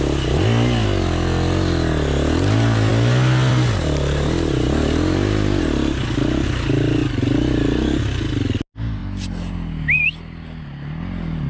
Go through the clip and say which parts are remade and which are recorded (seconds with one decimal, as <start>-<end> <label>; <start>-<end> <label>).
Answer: 0.0-11.5 recorded